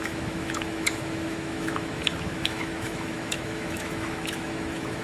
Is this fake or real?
fake